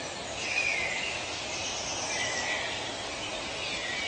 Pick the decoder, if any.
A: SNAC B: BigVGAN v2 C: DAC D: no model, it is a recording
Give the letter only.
D